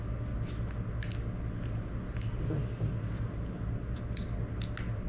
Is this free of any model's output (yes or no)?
yes